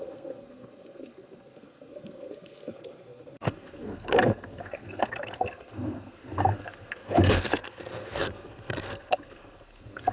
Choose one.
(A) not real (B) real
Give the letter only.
A